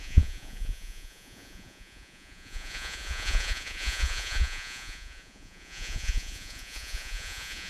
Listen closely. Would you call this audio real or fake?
fake